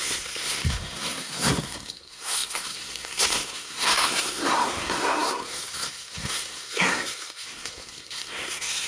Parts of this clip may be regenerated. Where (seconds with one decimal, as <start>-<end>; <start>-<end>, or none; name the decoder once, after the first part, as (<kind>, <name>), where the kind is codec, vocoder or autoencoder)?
0.0-8.9 (codec, SNAC)